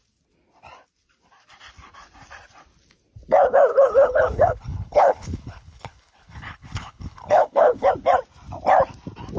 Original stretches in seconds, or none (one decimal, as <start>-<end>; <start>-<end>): 0.0-3.7; 7.9-9.4